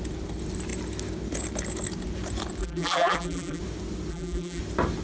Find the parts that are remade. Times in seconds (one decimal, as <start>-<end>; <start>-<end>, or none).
2.6-3.6; 4.1-4.6